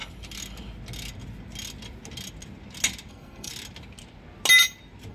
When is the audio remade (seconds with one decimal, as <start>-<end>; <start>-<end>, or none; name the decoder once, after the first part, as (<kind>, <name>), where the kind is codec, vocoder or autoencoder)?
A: 3.1-3.5 (codec, SNAC)